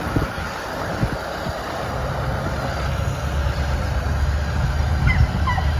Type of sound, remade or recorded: recorded